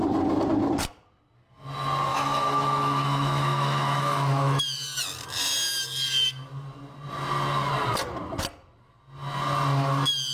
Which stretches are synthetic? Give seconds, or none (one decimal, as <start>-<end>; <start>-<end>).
2.1-4.6